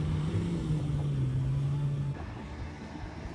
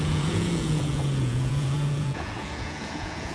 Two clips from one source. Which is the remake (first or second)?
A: second